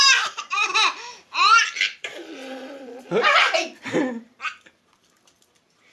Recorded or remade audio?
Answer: remade